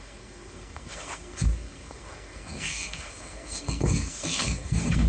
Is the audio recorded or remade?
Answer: remade